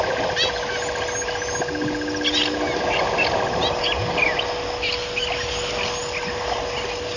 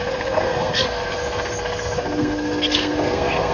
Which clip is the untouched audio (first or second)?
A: first